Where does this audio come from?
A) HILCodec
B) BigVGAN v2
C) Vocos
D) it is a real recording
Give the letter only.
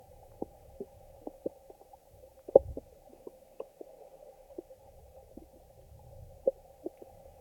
D